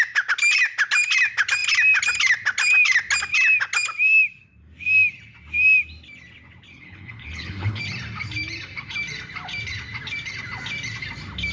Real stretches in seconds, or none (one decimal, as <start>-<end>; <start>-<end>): 0.0-6.7; 7.8-11.5